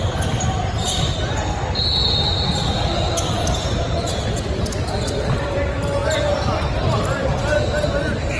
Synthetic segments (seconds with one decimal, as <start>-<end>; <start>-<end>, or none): 3.6-4.4